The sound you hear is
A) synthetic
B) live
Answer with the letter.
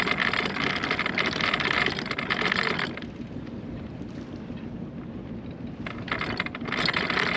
B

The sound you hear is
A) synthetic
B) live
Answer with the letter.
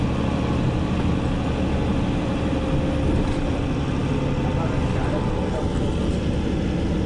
B